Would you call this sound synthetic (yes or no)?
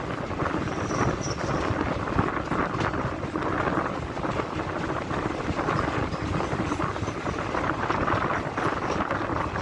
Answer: no